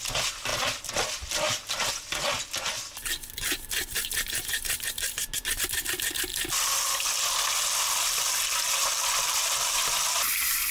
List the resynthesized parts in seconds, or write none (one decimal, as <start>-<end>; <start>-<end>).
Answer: none